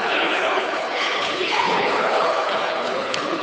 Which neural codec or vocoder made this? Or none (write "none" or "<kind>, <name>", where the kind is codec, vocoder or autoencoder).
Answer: codec, HILCodec